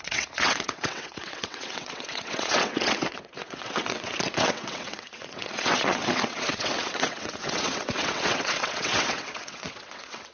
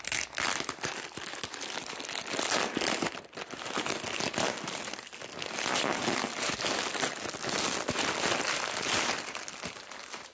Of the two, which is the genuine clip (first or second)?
second